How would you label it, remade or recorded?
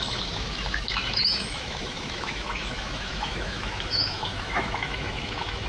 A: remade